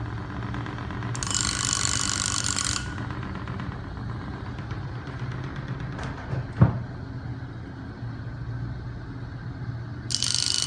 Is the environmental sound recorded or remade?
recorded